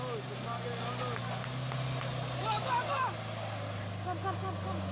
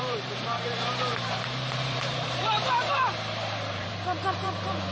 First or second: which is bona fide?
first